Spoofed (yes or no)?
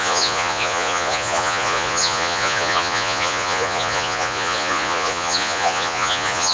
yes